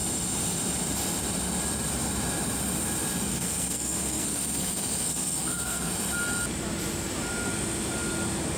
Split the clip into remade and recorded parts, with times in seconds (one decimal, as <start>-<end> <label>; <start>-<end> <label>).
0.0-3.3 recorded; 3.3-5.9 remade; 5.9-8.6 recorded

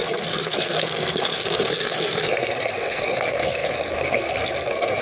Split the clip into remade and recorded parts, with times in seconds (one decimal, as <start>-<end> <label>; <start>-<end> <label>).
0.0-5.0 remade

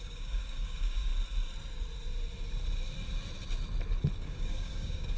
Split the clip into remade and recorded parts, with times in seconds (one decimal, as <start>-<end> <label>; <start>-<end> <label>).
0.0-1.1 remade; 1.1-4.2 recorded; 4.2-5.2 remade

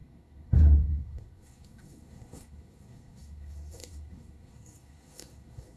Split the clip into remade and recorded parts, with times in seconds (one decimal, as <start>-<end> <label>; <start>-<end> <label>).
0.0-5.8 remade

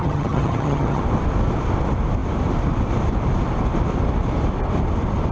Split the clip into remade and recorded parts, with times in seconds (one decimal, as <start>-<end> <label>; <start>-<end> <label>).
0.0-1.0 remade; 1.0-5.3 recorded

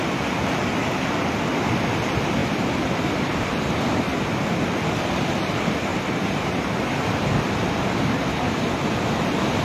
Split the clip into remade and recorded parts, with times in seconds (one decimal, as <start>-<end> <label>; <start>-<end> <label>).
0.0-2.4 recorded; 2.4-3.7 remade; 3.7-5.9 recorded; 5.9-7.5 remade; 7.5-9.6 recorded

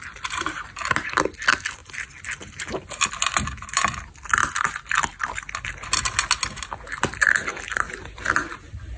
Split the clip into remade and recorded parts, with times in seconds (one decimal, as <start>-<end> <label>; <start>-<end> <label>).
0.0-9.0 recorded